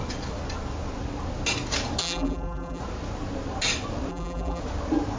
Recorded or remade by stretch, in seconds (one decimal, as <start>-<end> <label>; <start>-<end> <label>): 0.0-2.0 recorded; 2.0-2.8 remade; 2.8-4.1 recorded; 4.1-4.6 remade; 4.6-5.2 recorded